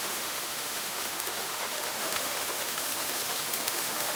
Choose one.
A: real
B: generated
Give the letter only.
B